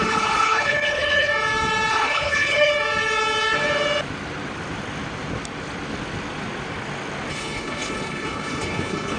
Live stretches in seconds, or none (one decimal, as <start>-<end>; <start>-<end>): 1.3-1.9; 2.7-7.3